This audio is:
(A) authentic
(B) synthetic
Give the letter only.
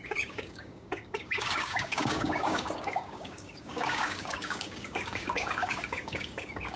B